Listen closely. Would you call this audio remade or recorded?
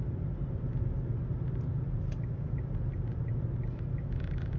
recorded